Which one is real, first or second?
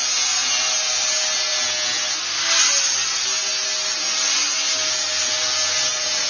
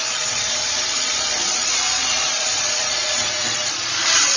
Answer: first